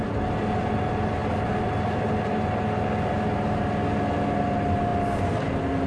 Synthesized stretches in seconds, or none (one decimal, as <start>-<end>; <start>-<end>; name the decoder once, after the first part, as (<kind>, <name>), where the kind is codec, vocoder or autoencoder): none